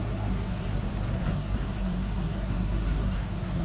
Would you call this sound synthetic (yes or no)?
yes